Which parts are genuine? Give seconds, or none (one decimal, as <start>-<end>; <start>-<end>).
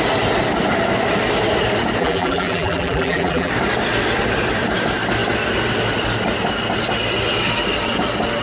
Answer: 0.0-2.0; 3.5-8.4